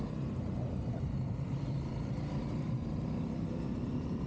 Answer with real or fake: fake